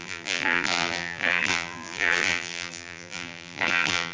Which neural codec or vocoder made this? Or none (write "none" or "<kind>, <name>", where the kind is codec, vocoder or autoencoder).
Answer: vocoder, BigVGAN v2